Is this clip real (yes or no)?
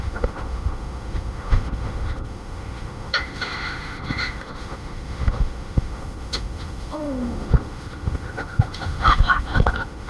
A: no